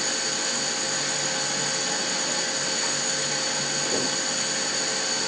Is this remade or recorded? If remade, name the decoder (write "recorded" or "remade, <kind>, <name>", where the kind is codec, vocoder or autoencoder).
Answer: recorded